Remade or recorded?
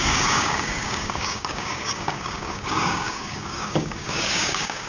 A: remade